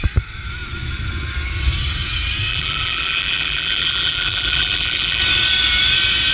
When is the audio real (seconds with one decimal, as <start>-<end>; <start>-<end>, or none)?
0.0-2.5; 5.2-6.3